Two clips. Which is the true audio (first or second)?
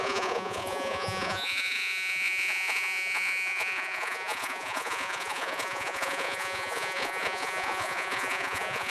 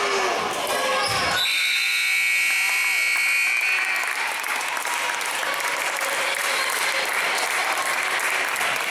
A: second